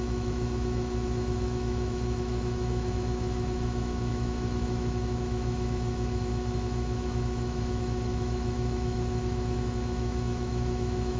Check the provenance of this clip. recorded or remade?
remade